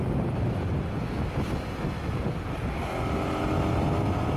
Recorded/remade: recorded